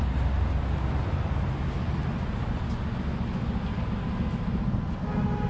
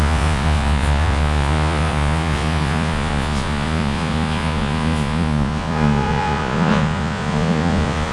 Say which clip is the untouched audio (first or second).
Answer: first